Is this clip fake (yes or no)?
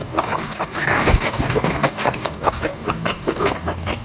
yes